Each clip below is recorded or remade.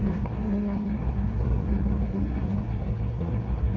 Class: remade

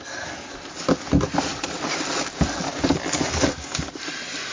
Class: recorded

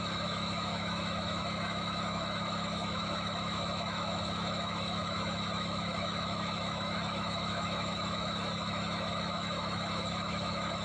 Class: remade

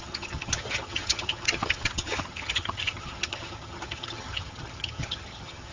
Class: remade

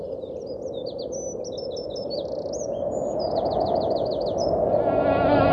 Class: recorded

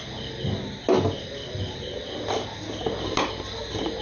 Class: recorded